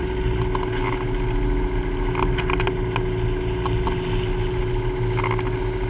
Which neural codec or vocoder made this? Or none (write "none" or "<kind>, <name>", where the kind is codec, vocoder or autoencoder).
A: none